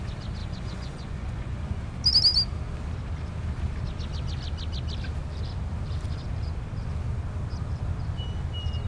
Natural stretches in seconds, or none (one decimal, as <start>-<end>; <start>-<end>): 0.0-0.4; 1.8-8.9